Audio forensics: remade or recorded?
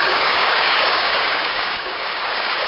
remade